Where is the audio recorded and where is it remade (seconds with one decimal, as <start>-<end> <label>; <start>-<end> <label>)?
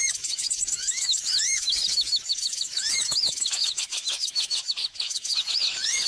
0.0-6.1 remade